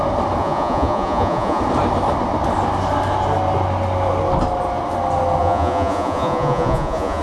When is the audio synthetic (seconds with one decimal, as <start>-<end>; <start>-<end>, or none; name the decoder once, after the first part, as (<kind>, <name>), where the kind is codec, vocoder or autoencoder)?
0.4-1.6 (vocoder, Vocos); 5.4-7.2